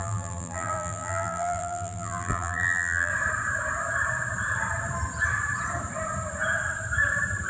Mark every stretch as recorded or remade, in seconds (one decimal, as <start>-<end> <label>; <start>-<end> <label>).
0.0-3.1 remade; 3.1-7.5 recorded